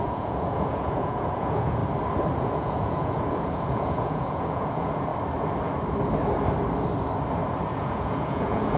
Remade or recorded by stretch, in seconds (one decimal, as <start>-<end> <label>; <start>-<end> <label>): 0.0-1.8 remade; 1.8-2.4 recorded; 2.4-5.1 remade; 5.1-7.6 recorded; 7.6-8.8 remade